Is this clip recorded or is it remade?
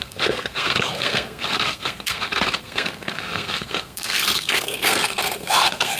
remade